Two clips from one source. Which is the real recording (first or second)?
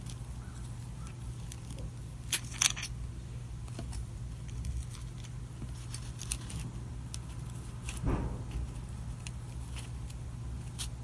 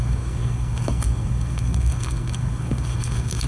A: first